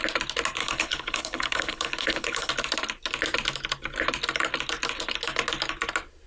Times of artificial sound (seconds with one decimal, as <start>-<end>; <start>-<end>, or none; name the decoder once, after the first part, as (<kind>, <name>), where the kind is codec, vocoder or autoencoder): 0.6-2.5 (codec, HILCodec)